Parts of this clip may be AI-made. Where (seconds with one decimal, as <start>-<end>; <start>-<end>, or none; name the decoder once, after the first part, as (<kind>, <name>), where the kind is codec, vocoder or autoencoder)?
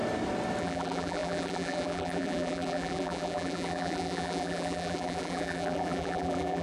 0.6-6.6 (vocoder, BigVGAN v2)